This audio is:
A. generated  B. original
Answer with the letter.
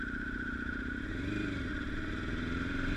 A